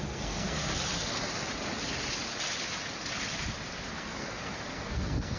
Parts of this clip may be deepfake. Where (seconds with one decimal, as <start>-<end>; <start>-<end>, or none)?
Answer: 0.0-0.7; 3.9-5.4